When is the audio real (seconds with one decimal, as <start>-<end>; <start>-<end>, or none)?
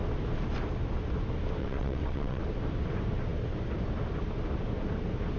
0.0-1.6; 2.4-5.4